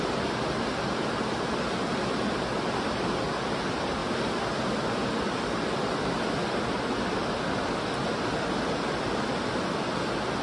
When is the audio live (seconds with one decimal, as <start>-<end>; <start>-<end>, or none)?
0.0-10.4